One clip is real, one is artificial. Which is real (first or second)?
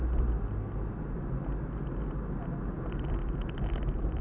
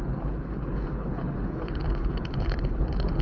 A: first